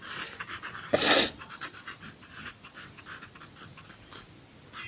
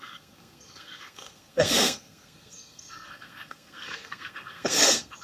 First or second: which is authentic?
first